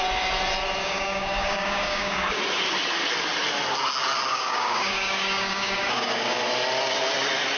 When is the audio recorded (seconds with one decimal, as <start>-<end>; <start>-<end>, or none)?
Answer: 0.0-0.8; 2.4-4.3; 6.4-7.6